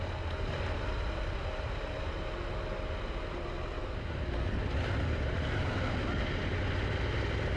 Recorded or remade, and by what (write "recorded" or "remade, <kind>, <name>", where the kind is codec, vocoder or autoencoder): recorded